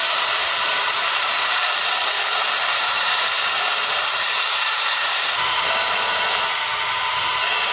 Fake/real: fake